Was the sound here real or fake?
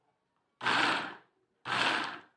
real